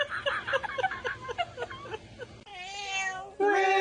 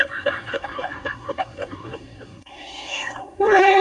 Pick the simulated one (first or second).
second